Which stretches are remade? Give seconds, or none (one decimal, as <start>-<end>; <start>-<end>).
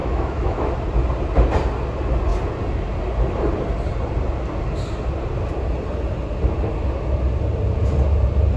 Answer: 0.0-0.7